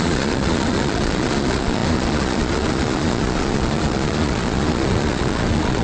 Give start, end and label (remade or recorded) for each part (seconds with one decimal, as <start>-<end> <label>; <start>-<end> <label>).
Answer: 0.0-5.8 remade